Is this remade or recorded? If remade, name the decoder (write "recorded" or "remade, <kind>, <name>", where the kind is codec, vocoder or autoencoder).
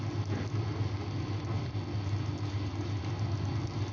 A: recorded